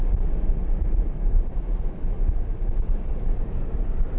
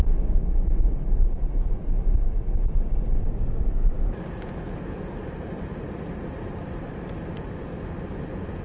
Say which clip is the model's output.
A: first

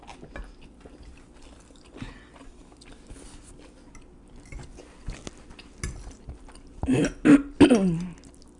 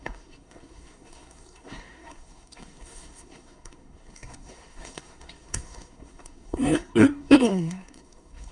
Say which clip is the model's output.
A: second